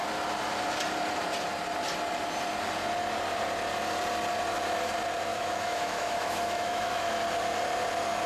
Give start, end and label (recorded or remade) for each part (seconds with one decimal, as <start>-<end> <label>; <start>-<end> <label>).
0.0-5.3 recorded; 5.3-7.1 remade; 7.1-8.3 recorded